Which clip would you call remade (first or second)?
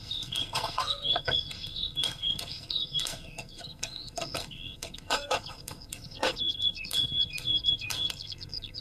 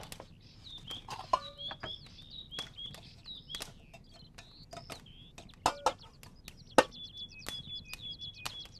first